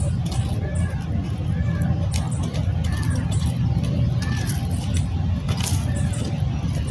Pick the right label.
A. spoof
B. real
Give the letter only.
B